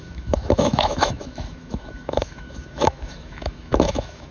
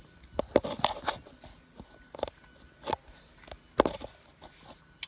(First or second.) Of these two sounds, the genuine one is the second